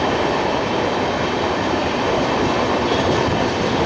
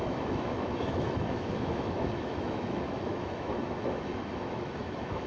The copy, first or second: second